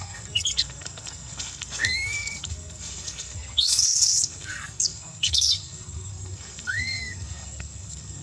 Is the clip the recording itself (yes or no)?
no